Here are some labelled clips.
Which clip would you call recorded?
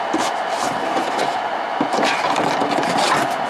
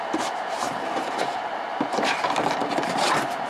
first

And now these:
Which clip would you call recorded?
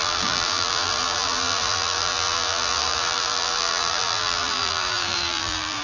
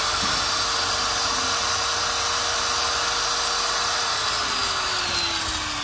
second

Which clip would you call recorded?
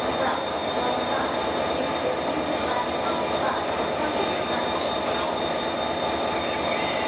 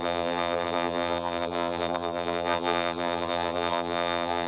first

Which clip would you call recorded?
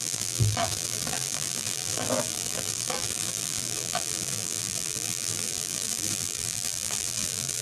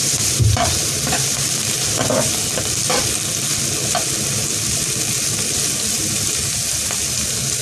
second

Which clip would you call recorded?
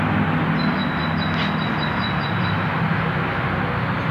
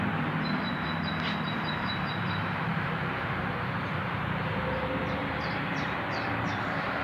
first